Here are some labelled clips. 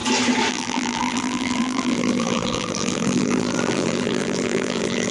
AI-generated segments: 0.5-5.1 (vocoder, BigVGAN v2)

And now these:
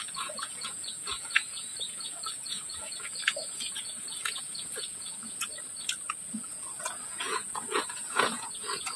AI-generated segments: 0.0-5.5 (vocoder, Vocos); 6.3-9.0

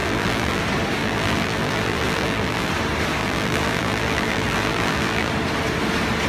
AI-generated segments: 0.0-0.6 (vocoder, BigVGAN v2); 1.0-2.7; 3.2-5.3

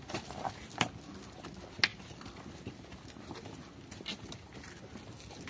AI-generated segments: none

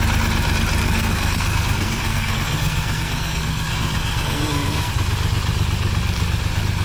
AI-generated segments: 0.8-4.9 (codec, SNAC)

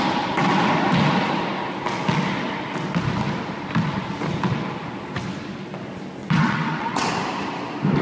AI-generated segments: 6.2-7.1 (vocoder, WaveNeXt)